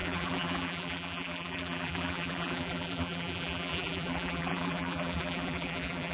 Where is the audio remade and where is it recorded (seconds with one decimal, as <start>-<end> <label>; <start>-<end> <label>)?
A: 0.0-6.1 remade